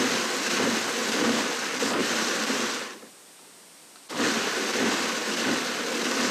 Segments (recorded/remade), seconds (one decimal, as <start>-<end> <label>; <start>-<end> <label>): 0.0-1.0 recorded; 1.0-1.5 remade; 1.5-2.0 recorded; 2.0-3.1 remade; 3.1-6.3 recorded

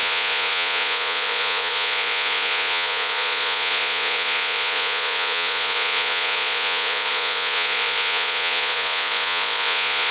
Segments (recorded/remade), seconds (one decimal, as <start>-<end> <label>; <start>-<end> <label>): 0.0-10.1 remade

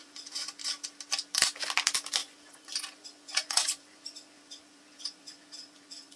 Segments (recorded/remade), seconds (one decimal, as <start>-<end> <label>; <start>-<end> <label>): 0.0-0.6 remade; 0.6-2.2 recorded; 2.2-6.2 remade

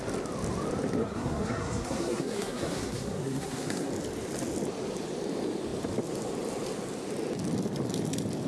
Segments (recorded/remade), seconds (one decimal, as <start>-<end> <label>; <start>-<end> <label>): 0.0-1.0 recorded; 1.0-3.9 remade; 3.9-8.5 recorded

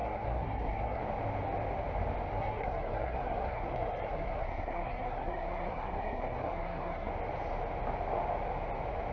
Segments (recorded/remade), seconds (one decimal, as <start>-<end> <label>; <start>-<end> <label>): 0.0-1.0 remade; 1.0-2.3 recorded; 2.3-7.1 remade; 7.1-9.1 recorded